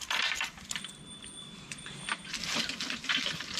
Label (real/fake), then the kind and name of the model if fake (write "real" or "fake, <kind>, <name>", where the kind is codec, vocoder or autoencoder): real